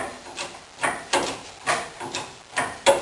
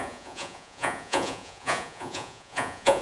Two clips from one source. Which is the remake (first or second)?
second